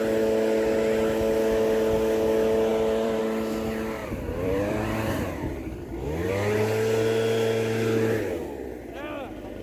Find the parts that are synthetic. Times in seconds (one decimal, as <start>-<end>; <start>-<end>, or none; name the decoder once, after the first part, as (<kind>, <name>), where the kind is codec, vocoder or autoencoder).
2.7-3.2 (vocoder, BigVGAN v2); 4.0-6.3